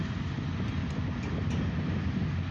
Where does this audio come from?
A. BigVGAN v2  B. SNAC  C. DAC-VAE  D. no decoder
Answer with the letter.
D